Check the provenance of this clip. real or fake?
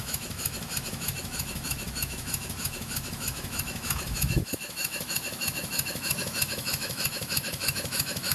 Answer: fake